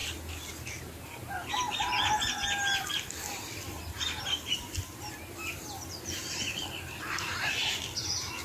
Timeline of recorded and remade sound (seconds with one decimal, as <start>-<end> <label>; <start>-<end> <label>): 0.0-3.3 recorded; 3.3-7.6 remade; 7.6-8.4 recorded